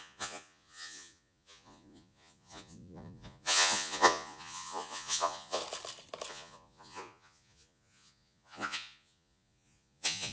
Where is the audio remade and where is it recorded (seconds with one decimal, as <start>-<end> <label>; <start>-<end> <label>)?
0.0-5.6 remade; 5.6-6.3 recorded; 6.3-10.3 remade